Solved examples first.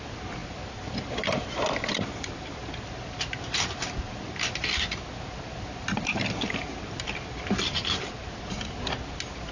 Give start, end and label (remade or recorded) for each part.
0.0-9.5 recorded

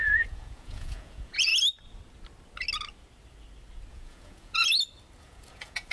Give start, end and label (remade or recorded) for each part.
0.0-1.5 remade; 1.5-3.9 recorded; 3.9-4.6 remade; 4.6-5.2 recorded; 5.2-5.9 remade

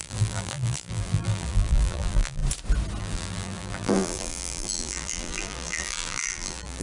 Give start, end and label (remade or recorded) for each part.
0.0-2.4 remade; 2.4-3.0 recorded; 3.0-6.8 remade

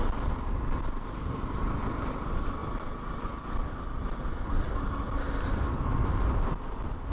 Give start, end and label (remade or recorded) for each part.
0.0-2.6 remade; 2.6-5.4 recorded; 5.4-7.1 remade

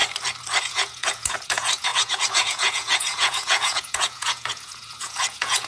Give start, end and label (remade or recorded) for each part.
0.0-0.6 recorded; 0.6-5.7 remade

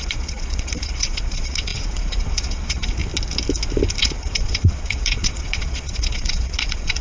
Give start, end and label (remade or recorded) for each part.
0.0-3.0 remade; 3.0-4.0 recorded; 4.0-7.0 remade